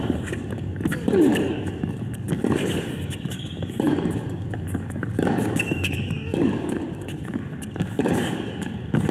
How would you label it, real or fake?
fake